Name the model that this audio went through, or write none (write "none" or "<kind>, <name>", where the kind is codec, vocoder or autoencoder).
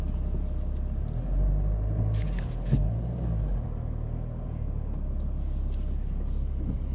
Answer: none